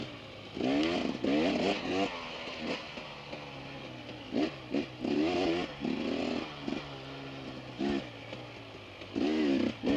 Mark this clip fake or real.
real